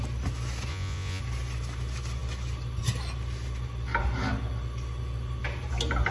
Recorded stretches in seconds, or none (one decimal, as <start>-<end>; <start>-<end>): 0.0-0.7; 1.2-6.1